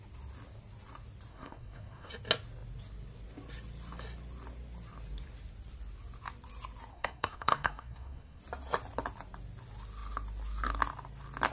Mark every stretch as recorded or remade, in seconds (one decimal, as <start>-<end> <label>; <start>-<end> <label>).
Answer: 0.0-1.3 recorded; 1.3-2.1 remade; 2.1-6.9 recorded; 6.9-8.4 remade; 8.4-11.5 recorded